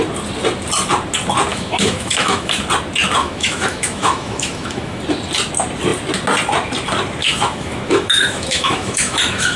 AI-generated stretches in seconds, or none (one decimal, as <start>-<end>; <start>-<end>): 1.5-2.6; 3.2-5.0; 7.2-9.6